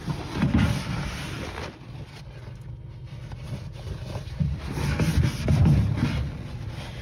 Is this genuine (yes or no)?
yes